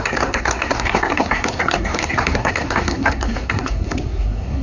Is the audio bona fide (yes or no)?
no